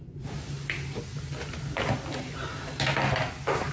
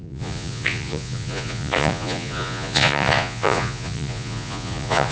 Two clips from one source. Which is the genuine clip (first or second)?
first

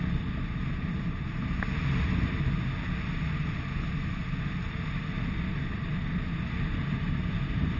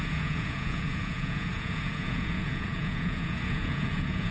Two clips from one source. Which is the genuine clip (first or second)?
first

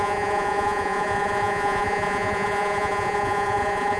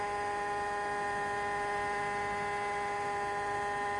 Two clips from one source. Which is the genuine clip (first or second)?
second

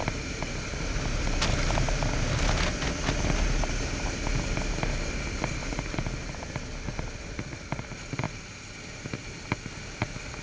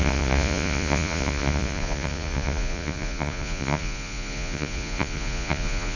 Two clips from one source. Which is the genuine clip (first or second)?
first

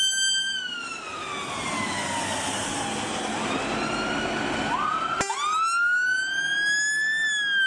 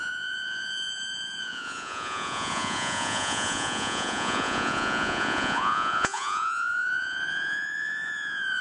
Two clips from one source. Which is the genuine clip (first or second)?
first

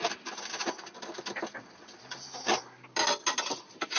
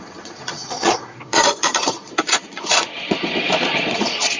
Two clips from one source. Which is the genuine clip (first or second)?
first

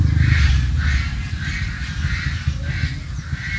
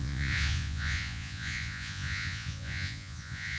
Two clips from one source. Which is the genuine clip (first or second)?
first